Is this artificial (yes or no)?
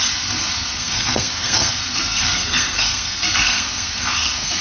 yes